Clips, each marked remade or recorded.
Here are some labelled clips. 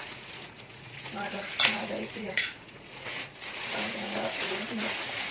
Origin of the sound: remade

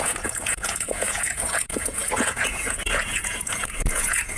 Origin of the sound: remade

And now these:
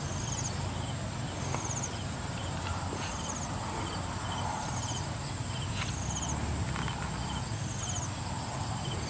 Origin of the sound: recorded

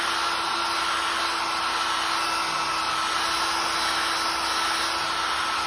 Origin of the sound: recorded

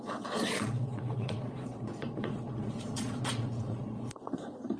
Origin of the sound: remade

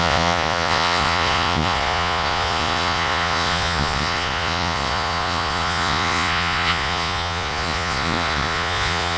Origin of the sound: remade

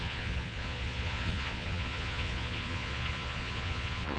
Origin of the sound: remade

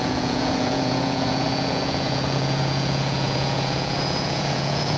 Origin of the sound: remade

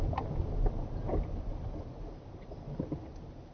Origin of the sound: recorded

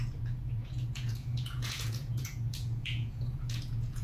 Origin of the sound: remade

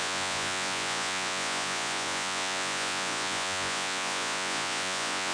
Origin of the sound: remade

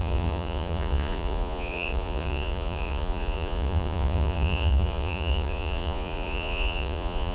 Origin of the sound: remade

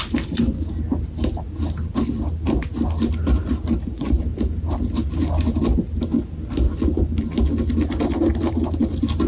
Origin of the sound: recorded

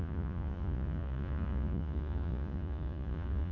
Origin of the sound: remade